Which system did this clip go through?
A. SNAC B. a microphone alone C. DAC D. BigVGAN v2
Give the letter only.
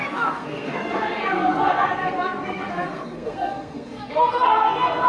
A